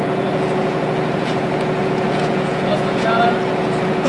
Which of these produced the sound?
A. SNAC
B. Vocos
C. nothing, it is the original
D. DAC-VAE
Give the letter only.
B